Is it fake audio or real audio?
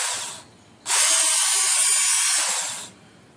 real